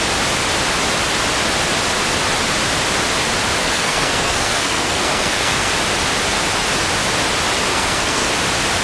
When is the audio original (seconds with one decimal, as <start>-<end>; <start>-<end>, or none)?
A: 0.0-3.6; 5.7-7.7; 8.3-8.8